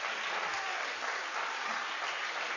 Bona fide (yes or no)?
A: yes